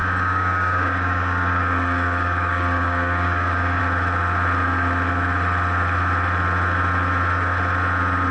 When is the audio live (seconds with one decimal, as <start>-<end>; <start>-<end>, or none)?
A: 3.8-8.3